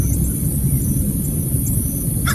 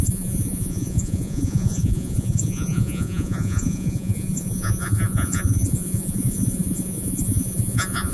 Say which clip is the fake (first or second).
second